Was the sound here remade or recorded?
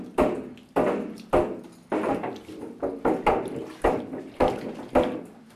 recorded